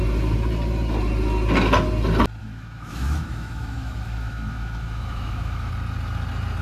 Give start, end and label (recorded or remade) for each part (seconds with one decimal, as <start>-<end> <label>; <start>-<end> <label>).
0.0-2.4 recorded; 2.4-5.7 remade; 5.7-6.6 recorded